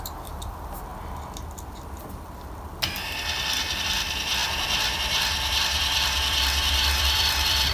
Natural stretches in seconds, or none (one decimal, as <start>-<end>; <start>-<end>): 0.9-3.8

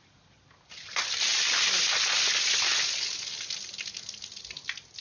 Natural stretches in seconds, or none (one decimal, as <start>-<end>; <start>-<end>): 0.0-5.0

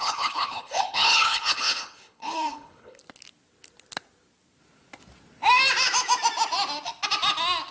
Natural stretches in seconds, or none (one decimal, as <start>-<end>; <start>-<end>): 3.0-7.7

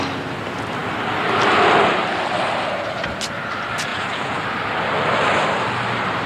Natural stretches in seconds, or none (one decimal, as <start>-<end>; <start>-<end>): 0.0-3.9; 4.4-6.3

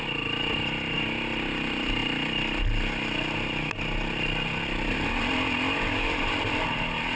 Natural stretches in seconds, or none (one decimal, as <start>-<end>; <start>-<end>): 0.0-7.2

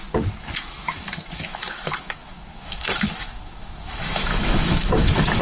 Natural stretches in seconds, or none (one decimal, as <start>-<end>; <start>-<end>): none

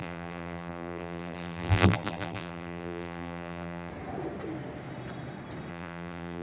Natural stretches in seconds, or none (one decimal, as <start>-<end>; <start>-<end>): 3.9-5.7